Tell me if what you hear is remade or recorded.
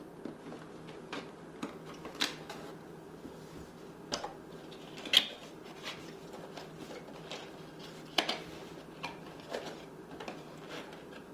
recorded